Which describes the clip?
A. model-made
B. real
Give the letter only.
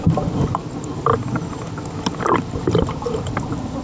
B